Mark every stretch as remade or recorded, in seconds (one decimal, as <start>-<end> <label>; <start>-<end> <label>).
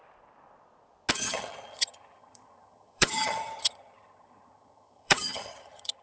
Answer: 0.0-1.1 recorded; 1.1-6.0 remade